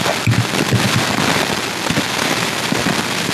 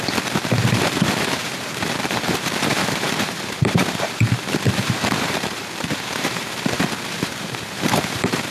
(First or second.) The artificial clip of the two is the second